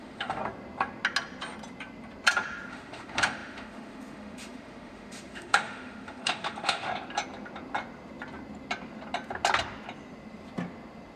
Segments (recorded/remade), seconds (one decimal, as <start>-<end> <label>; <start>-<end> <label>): 0.0-0.4 remade; 0.4-2.7 recorded; 2.7-6.9 remade; 6.9-11.2 recorded